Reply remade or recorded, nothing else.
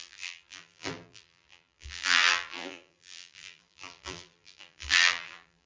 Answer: remade